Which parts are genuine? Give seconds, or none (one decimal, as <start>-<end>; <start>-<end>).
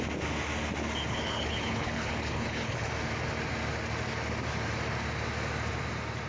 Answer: 0.0-1.1; 2.9-6.3